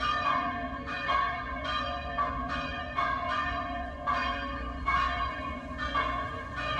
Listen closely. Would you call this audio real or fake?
fake